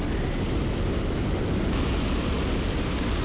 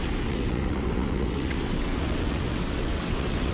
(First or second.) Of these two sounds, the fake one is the second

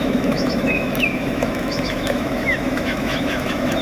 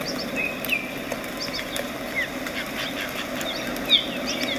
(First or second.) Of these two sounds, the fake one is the first